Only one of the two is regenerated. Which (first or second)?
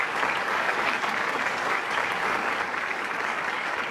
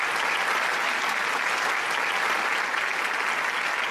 first